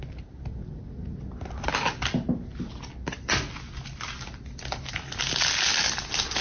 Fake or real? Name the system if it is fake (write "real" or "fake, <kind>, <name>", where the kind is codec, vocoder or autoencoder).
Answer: real